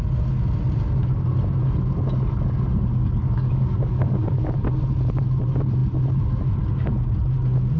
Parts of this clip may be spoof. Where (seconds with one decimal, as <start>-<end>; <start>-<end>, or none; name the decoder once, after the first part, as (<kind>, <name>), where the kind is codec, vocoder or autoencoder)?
2.9-4.5 (codec, DAC)